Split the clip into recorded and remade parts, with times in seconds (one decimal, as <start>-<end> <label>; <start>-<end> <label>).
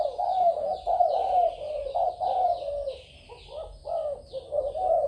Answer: 0.0-1.2 recorded; 1.2-1.9 remade; 1.9-5.1 recorded